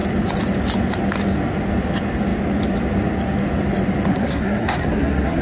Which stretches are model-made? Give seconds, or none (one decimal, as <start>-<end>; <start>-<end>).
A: 4.1-5.4